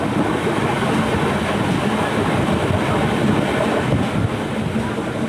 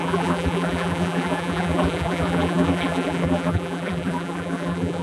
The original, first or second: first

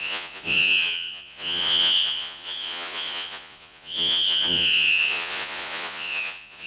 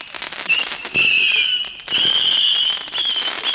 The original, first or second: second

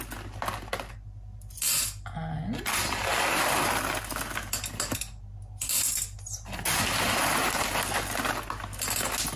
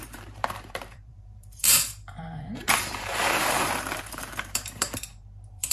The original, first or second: first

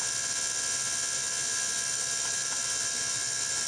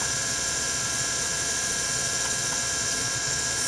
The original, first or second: first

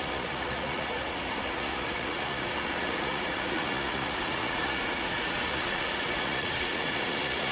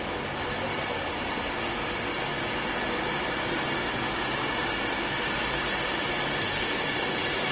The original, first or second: second